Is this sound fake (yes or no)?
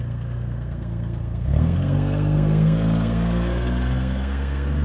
yes